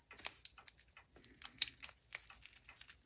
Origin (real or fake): real